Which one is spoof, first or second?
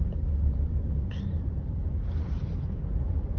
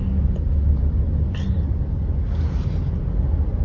first